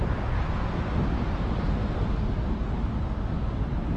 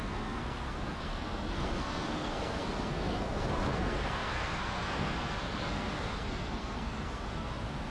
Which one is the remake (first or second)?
second